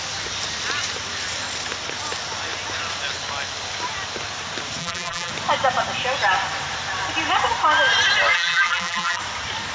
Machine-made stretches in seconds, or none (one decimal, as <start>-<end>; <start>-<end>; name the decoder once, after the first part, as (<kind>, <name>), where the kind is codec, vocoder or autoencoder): 4.8-5.3 (vocoder, BigVGAN v2); 8.3-9.2

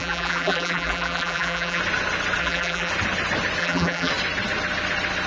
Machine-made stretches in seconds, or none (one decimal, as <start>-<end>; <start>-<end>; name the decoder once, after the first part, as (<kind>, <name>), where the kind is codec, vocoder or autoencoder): 0.0-1.8 (vocoder, BigVGAN v2); 2.4-2.9; 3.6-4.1

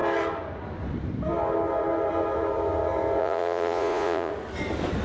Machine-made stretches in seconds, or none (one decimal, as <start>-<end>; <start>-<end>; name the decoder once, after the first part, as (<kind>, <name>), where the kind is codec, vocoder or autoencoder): 3.2-4.3 (vocoder, Vocos)

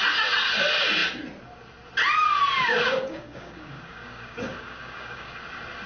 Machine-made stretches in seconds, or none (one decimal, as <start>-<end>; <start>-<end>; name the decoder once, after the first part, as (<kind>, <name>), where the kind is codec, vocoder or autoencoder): 2.7-5.3 (codec, DAC)

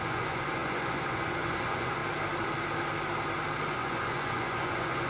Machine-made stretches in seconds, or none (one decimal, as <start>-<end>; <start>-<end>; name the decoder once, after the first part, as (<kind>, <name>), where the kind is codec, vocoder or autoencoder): 0.0-2.0 (vocoder, Vocos); 3.7-5.1

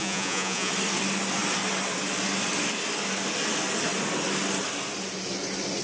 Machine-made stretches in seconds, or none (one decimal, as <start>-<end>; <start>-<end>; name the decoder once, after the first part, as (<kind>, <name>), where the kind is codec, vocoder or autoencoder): 0.0-0.7 (vocoder, Vocos)

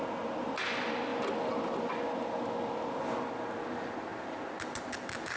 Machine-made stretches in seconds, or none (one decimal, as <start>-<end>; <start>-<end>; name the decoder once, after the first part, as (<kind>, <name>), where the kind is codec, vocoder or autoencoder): none

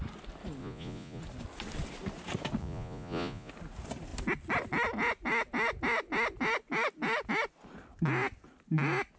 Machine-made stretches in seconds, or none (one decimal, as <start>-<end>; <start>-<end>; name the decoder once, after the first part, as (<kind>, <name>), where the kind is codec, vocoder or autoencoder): 0.6-1.2 (vocoder, Vocos); 2.6-3.5